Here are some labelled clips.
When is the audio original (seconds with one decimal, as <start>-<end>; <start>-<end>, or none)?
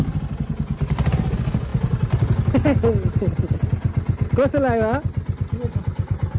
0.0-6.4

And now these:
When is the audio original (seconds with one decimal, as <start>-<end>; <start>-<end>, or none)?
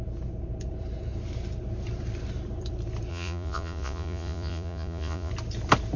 0.0-3.1; 5.3-6.0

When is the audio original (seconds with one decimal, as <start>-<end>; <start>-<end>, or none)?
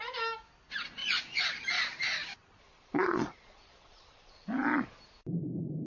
0.0-1.0; 4.5-5.9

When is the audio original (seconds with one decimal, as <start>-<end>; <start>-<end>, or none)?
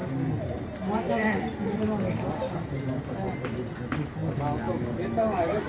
0.0-5.7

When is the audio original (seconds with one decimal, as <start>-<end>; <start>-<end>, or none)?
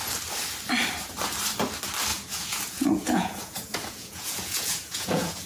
0.0-2.1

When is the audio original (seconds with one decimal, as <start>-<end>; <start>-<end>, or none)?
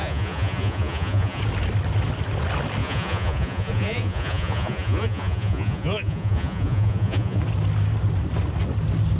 1.4-2.8; 7.4-9.2